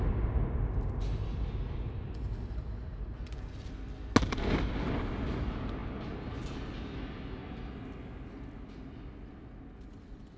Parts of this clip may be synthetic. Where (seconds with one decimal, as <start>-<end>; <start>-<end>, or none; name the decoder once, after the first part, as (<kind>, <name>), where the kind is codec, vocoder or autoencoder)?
none